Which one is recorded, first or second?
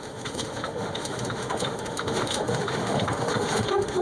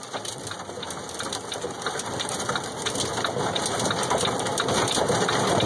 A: second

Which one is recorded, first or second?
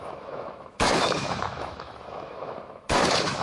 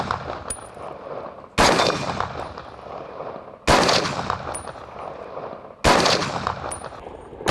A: second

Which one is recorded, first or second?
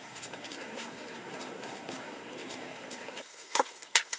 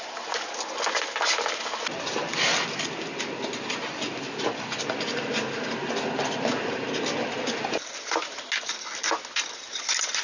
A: second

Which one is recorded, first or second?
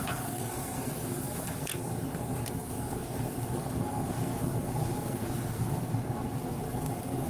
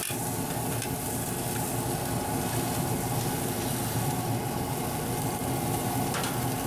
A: second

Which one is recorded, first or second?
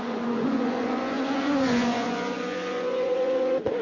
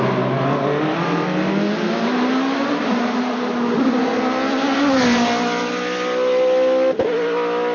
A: second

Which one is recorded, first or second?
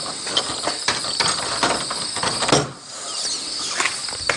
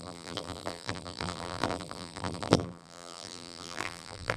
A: first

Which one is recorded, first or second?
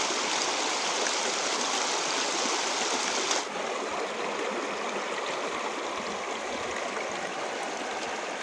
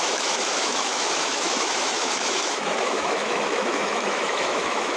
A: first